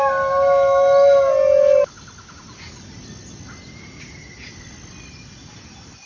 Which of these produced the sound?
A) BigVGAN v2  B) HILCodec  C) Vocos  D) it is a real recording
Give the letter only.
D